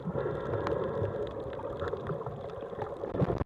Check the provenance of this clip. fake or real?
real